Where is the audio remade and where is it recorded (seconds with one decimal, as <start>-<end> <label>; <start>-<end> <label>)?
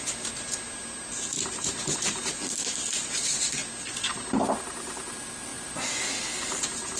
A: 0.0-7.0 recorded